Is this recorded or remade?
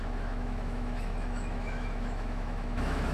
remade